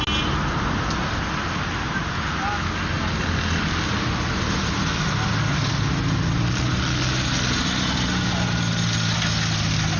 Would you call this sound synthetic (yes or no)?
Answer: no